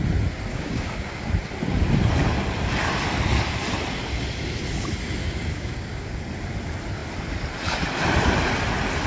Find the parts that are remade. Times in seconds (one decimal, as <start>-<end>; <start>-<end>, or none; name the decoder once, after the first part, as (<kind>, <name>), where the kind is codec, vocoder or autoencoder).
0.5-1.3 (codec, DAC); 5.2-6.2